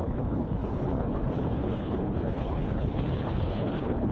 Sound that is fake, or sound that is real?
fake